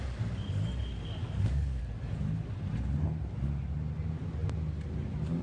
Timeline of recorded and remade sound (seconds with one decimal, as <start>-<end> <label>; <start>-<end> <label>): 0.0-1.2 recorded; 1.2-1.8 remade; 1.8-5.4 recorded